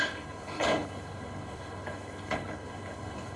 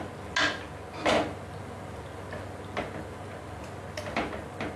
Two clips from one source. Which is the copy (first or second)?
first